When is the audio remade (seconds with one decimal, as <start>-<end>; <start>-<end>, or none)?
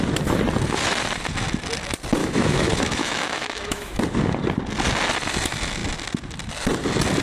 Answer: 2.2-4.0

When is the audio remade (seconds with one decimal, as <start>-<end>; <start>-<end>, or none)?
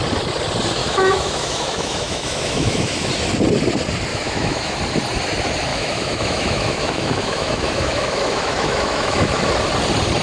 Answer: 0.8-3.1; 4.1-4.8; 5.7-9.5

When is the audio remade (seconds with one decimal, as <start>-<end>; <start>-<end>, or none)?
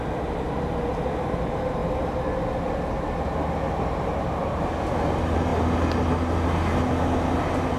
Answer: none